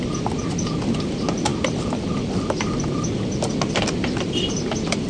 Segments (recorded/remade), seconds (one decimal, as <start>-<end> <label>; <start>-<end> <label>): 0.0-5.1 recorded